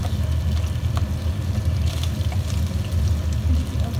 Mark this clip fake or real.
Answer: real